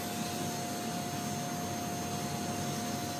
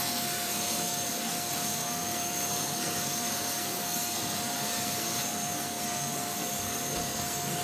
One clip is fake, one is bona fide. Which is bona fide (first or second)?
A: first